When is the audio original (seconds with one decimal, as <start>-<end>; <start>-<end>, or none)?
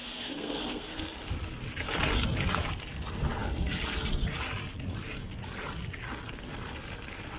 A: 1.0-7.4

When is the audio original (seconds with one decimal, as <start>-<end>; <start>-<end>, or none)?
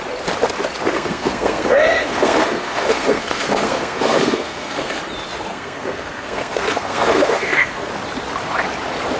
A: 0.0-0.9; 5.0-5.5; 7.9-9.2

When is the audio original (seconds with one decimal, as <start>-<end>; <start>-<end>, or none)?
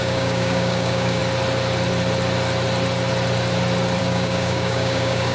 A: 1.2-4.0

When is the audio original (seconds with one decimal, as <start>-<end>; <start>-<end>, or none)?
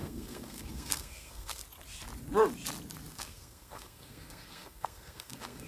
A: 1.6-3.1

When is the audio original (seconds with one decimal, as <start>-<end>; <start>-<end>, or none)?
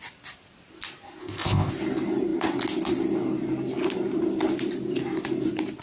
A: 0.0-1.2; 1.7-5.8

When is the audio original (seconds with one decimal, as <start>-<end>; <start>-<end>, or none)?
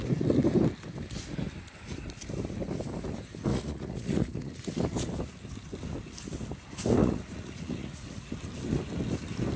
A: 0.0-3.5; 4.7-7.0; 8.3-9.6